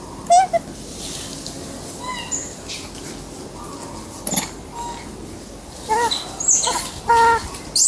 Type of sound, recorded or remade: recorded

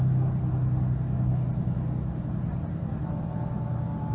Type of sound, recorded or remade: recorded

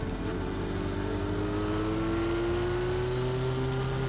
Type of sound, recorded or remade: recorded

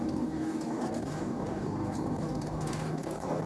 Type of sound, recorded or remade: remade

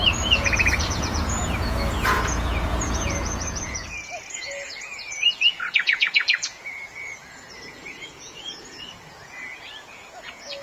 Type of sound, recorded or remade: remade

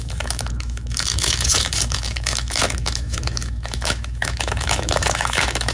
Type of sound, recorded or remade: remade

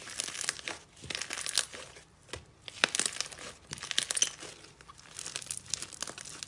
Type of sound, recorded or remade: recorded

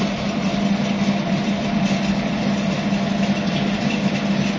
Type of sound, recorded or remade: recorded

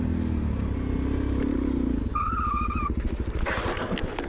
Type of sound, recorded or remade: recorded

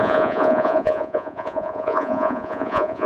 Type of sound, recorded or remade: remade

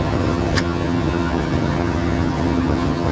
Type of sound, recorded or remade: remade